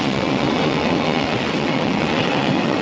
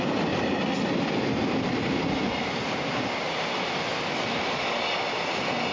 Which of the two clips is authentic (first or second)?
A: second